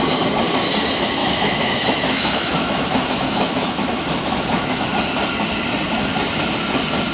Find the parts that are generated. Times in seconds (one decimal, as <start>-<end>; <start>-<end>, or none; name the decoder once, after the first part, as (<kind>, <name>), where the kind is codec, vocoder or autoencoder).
1.2-4.9 (autoencoder, DAC-VAE)